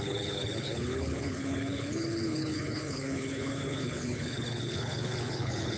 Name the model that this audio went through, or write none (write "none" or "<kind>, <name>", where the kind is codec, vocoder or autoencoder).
codec, HILCodec